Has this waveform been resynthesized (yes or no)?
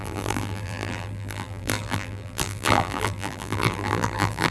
yes